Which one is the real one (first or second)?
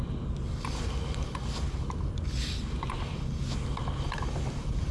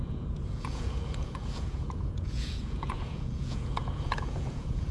first